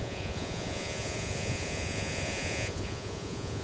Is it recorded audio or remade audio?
remade